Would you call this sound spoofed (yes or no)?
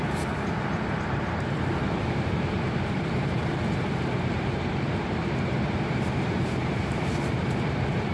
yes